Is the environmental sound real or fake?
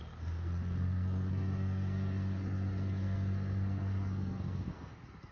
fake